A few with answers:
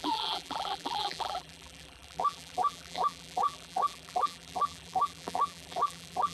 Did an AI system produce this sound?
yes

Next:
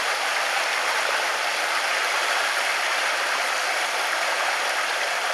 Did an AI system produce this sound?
yes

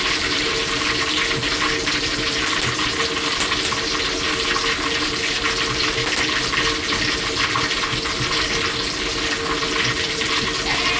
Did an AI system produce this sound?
no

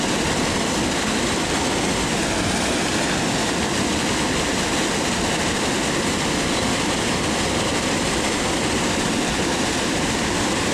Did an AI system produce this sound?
no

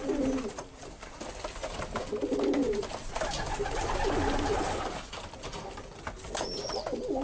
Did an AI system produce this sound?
yes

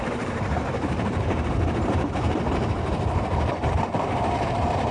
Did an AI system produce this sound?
yes